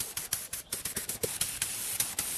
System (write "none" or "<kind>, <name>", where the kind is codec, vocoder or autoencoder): none